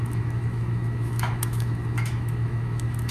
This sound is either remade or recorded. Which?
remade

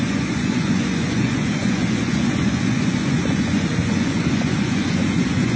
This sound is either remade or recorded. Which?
remade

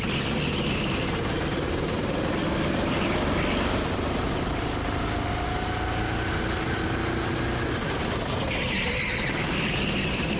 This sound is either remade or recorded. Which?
recorded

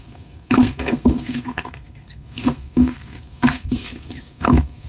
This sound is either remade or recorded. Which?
remade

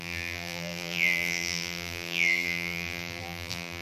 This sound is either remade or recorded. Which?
remade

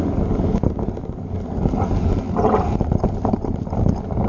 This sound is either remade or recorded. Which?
recorded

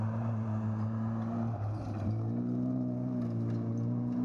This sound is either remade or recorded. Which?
recorded